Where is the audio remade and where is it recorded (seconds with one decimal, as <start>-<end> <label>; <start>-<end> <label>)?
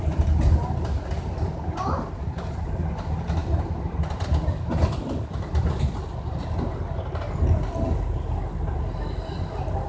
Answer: 0.0-9.9 recorded